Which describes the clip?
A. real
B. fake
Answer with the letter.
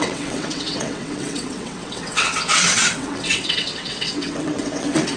B